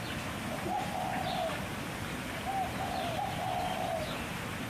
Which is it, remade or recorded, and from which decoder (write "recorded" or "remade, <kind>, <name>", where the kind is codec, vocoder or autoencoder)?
recorded